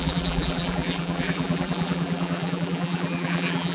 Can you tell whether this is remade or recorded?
remade